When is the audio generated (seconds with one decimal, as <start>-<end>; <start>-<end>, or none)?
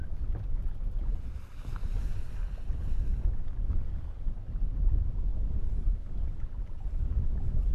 none